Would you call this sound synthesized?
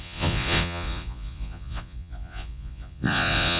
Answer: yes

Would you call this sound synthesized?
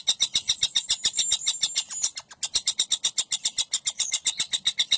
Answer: no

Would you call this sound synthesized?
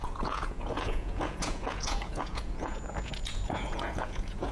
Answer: yes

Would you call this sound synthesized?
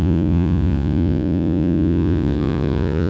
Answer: yes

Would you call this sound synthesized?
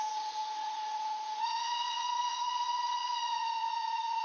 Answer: yes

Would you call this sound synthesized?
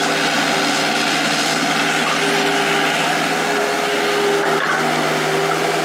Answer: no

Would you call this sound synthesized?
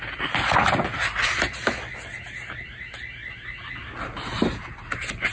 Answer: no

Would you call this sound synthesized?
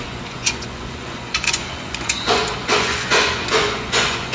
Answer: yes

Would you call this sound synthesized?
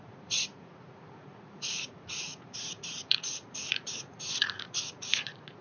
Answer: yes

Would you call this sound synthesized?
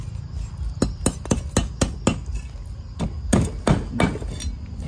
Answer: no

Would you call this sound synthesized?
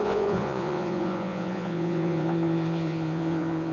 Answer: yes